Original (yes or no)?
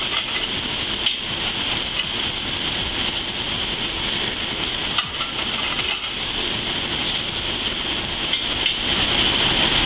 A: yes